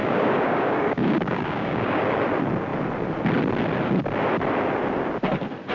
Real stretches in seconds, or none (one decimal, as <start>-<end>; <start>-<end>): 2.0-5.7

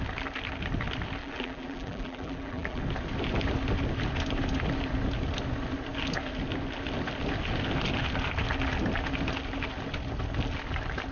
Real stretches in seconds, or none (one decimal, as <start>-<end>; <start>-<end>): 0.0-1.2; 2.8-11.1